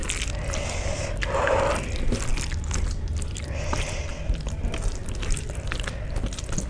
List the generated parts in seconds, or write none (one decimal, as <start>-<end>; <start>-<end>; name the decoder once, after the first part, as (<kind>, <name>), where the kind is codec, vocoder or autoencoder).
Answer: none